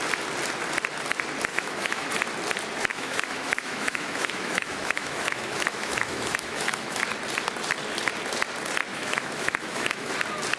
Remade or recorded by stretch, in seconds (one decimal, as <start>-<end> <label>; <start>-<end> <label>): 0.0-1.5 recorded; 1.5-2.1 remade; 2.1-2.9 recorded; 2.9-7.0 remade; 7.0-8.9 recorded; 8.9-10.1 remade; 10.1-10.6 recorded